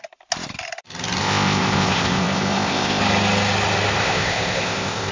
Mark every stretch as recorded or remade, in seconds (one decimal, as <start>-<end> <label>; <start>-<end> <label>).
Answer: 0.0-1.2 recorded; 1.2-3.0 remade; 3.0-4.0 recorded; 4.0-5.1 remade